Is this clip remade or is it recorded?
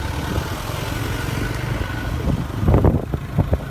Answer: recorded